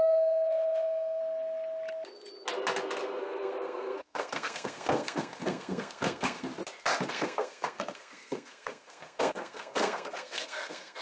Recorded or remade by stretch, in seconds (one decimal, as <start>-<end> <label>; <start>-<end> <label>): 0.0-1.2 remade; 1.2-3.2 recorded; 3.2-6.5 remade; 6.5-7.1 recorded; 7.1-11.0 remade